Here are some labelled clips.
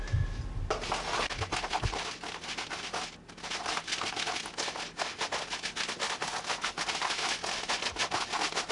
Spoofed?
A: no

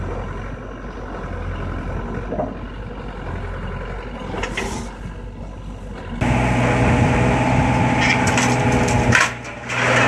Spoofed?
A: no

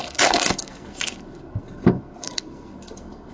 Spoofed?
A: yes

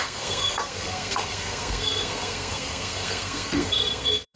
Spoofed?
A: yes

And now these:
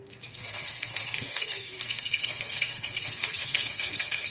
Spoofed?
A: yes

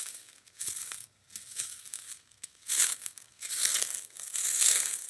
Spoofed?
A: yes